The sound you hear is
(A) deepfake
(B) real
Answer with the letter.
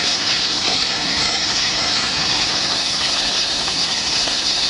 A